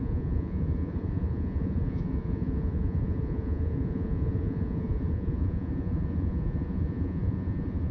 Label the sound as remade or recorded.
remade